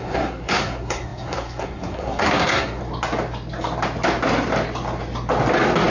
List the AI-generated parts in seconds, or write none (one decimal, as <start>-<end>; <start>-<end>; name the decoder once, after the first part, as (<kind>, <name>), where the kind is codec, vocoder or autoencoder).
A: 0.0-2.8 (codec, SNAC)